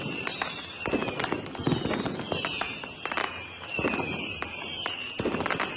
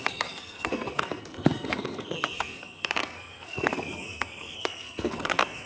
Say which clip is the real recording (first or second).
first